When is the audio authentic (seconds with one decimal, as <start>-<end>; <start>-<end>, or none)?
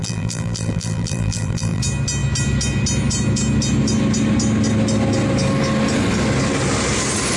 1.8-7.4